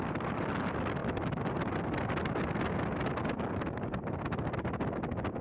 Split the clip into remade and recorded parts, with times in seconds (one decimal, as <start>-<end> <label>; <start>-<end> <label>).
0.0-5.4 recorded